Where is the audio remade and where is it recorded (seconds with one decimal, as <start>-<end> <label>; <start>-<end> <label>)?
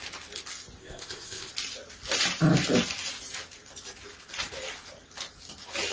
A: 0.0-0.8 recorded; 0.8-1.5 remade; 1.5-5.9 recorded